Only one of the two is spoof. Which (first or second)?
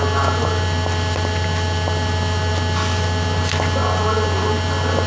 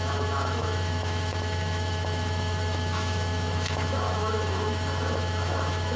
second